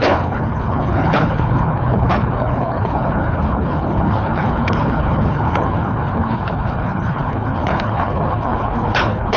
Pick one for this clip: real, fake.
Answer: fake